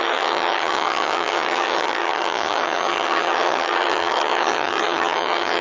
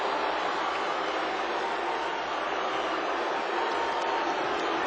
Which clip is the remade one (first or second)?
first